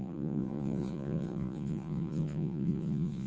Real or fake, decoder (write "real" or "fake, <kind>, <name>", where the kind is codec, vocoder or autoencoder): fake, vocoder, Vocos